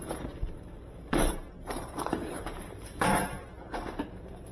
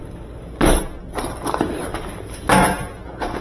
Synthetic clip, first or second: first